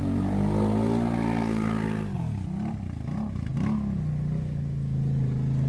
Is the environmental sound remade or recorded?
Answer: recorded